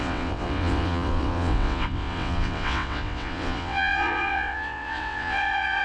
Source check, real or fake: fake